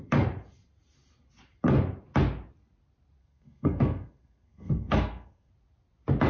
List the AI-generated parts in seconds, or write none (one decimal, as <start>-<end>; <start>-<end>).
3.2-5.5